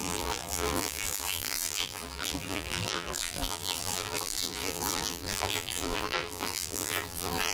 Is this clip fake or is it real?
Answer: fake